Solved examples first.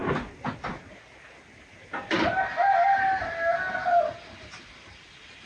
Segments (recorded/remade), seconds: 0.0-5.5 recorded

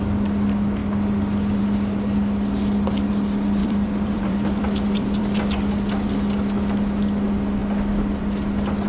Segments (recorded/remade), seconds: 0.0-3.6 recorded; 3.6-5.4 remade; 5.4-8.9 recorded

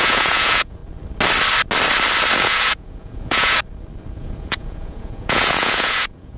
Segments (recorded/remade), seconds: 0.0-0.8 remade; 0.8-2.4 recorded; 2.4-3.6 remade; 3.6-4.2 recorded; 4.2-6.4 remade

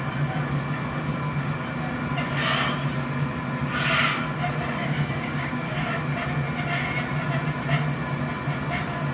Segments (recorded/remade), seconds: 0.0-4.8 recorded; 4.8-5.9 remade; 5.9-9.1 recorded

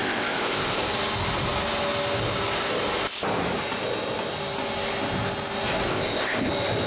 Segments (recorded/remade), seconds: 0.0-0.8 remade; 0.8-5.9 recorded; 5.9-6.5 remade; 6.5-6.9 recorded

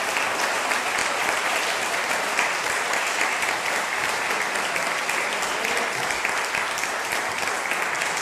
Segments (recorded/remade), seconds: 0.0-1.0 recorded; 1.0-4.3 remade; 4.3-8.2 recorded